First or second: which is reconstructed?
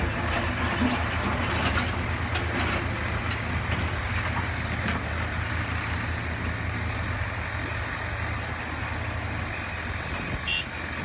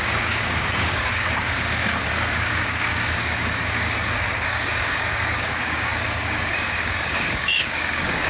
second